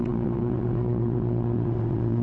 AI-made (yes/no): yes